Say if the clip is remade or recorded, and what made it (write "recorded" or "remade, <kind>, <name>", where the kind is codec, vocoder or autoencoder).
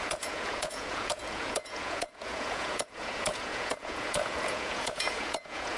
remade, vocoder, Vocos